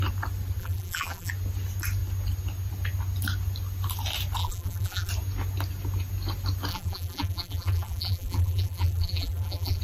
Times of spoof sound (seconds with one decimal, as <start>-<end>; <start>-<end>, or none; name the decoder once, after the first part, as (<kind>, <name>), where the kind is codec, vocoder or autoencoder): 0.6-1.3 (vocoder, BigVGAN v2); 4.4-5.1; 6.7-9.8